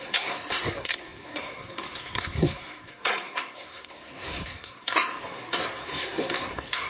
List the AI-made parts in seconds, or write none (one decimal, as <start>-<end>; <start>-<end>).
0.0-6.9